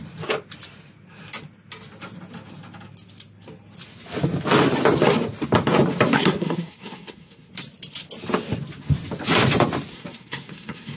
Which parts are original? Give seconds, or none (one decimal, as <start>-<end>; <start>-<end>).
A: 0.0-6.1; 7.5-9.9